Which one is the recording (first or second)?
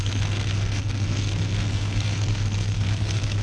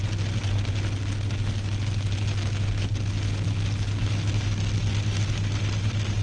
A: second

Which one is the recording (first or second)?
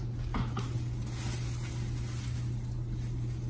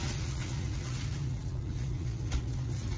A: first